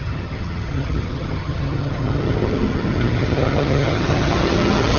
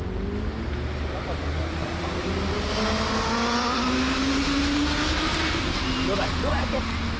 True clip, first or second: second